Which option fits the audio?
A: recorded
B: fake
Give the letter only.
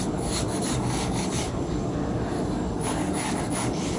B